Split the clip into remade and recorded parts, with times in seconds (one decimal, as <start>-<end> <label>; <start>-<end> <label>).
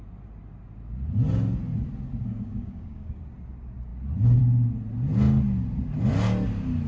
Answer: 0.0-2.2 recorded; 2.2-3.2 remade; 3.2-6.9 recorded